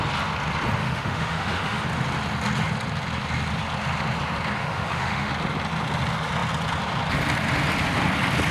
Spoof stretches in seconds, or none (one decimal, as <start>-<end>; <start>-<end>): 0.8-1.8; 4.6-5.3